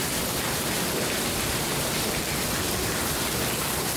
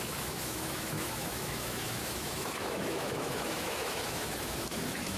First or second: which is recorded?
first